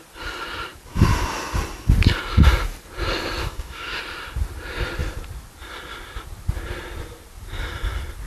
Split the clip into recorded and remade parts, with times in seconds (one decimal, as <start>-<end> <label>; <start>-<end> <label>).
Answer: 0.0-3.4 recorded; 3.4-4.0 remade; 4.0-8.3 recorded